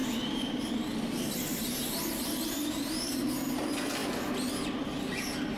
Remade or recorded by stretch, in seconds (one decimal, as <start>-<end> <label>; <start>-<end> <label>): 0.0-0.7 remade; 0.7-1.5 recorded; 1.5-3.2 remade; 3.2-5.6 recorded